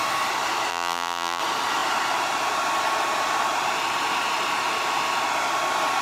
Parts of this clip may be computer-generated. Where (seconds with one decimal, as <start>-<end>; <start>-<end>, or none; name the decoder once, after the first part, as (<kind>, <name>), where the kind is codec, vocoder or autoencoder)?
0.7-1.4 (vocoder, BigVGAN v2)